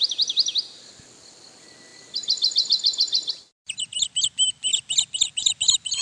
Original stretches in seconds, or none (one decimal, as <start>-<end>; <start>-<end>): 0.0-6.0